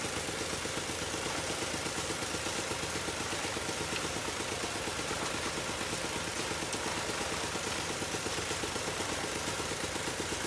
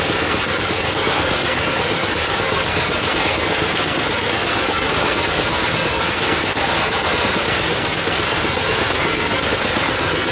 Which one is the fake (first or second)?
second